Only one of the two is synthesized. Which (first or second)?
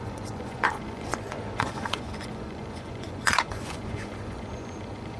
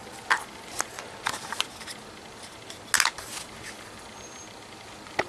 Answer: first